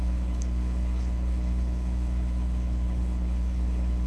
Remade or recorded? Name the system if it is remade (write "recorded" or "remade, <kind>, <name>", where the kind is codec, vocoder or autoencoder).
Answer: remade, codec, HILCodec